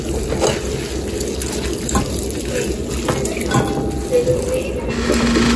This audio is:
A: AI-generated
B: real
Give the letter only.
B